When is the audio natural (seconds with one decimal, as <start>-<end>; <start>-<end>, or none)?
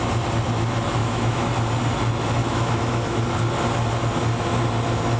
0.0-1.0; 1.5-2.4; 3.2-5.2